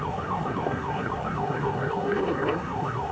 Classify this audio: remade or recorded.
remade